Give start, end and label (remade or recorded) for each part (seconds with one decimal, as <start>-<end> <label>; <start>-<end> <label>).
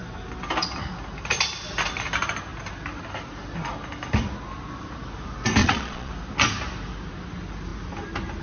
0.0-5.6 recorded; 5.6-6.1 remade; 6.1-8.4 recorded